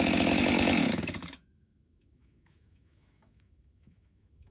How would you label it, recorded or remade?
remade